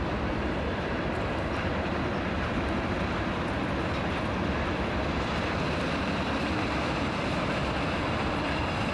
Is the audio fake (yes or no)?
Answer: yes